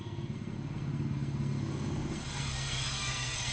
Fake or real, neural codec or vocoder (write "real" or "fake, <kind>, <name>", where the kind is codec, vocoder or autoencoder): fake, codec, SNAC